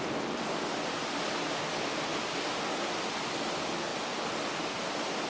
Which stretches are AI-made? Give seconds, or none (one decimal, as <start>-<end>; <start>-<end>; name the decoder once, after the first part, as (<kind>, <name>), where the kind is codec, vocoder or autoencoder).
none